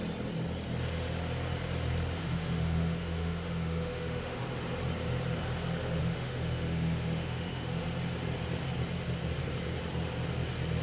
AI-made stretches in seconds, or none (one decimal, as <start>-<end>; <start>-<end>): 2.2-4.4; 6.0-7.8